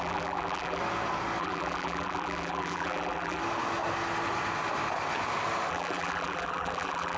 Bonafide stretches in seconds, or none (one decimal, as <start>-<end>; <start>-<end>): 0.8-1.4; 3.4-5.7